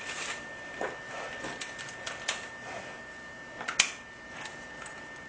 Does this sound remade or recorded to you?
recorded